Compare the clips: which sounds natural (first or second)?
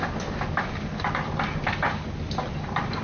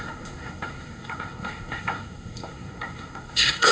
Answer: first